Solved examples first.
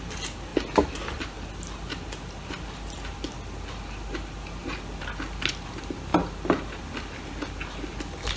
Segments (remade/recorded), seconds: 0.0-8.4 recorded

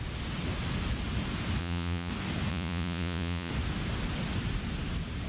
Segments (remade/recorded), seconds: 0.0-1.6 recorded; 1.6-2.1 remade; 2.1-2.5 recorded; 2.5-3.5 remade; 3.5-5.3 recorded

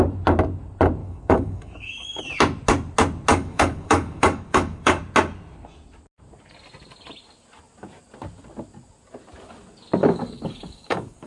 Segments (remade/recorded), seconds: 0.0-1.0 recorded; 1.0-2.2 remade; 2.2-3.3 recorded; 3.3-5.0 remade; 5.0-10.0 recorded; 10.0-11.3 remade